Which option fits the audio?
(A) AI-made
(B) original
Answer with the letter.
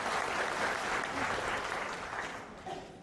B